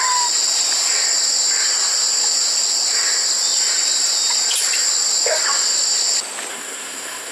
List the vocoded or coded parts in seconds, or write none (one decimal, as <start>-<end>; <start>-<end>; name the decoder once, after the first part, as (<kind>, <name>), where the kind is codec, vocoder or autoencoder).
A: 6.5-7.3 (codec, SNAC)